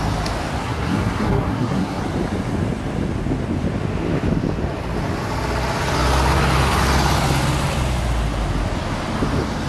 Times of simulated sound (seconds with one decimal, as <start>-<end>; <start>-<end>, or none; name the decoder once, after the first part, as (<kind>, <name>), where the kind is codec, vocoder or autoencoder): 0.6-2.0 (codec, SNAC)